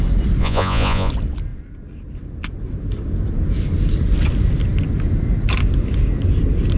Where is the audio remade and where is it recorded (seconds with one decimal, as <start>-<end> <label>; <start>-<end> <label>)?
0.0-0.4 recorded; 0.4-1.1 remade; 1.1-6.8 recorded